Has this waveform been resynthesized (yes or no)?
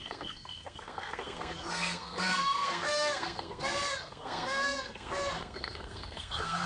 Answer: yes